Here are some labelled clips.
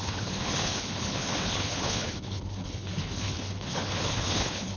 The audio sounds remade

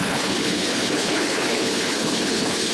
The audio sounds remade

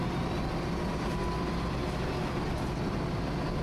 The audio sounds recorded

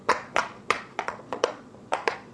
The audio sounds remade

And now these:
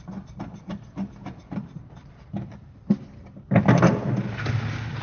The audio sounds recorded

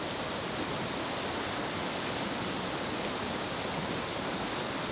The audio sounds recorded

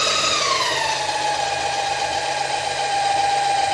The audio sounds recorded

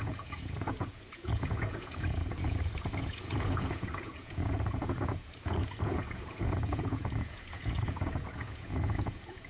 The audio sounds remade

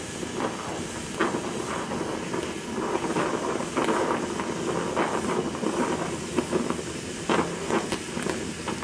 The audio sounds recorded